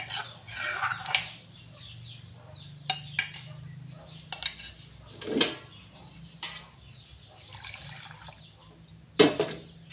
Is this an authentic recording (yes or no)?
yes